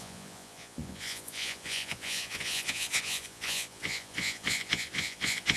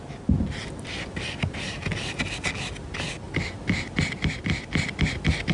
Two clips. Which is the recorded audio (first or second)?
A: second